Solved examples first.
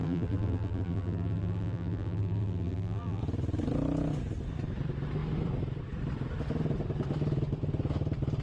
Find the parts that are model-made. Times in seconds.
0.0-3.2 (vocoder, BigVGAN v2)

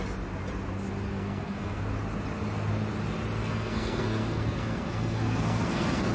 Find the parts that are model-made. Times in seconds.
1.1-1.8 (codec, SNAC); 3.4-6.1

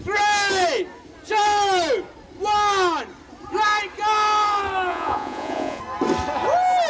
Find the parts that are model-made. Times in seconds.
4.9-5.8 (vocoder, Vocos)

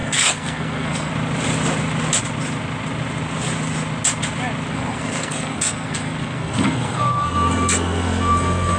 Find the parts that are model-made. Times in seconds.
0.0-1.1 (codec, SNAC); 4.7-8.8

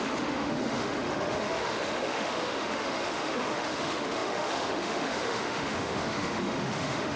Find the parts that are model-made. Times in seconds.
0.0-7.2 (autoencoder, DAC-VAE)

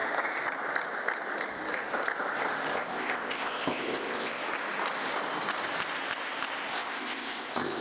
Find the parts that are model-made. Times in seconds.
2.7-4.4 (codec, ZipCodec); 6.7-7.8